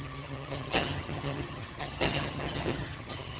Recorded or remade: remade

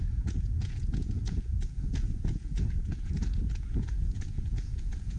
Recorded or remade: remade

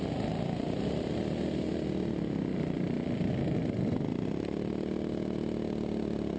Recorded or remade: recorded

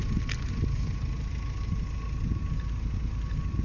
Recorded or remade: recorded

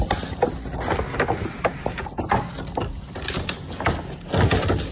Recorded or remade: recorded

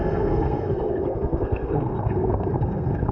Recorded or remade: remade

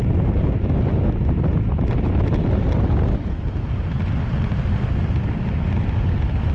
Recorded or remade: recorded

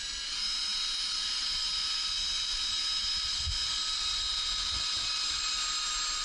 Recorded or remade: recorded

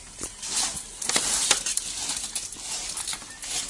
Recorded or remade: recorded